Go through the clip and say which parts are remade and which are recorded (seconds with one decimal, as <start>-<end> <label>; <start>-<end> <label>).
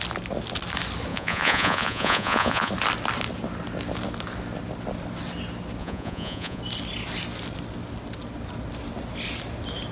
0.0-1.1 recorded; 1.1-2.7 remade; 2.7-5.8 recorded; 5.8-6.6 remade; 6.6-9.9 recorded